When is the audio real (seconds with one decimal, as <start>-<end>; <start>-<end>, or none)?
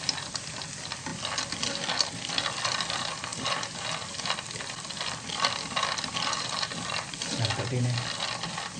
0.0-8.8